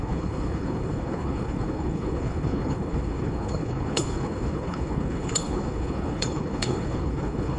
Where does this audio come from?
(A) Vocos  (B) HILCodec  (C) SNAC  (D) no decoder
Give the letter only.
B